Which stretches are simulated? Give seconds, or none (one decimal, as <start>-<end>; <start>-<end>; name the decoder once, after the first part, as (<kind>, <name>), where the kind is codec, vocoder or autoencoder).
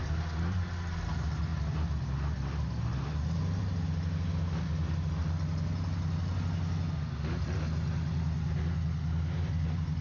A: none